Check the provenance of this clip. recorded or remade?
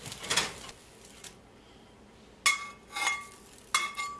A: recorded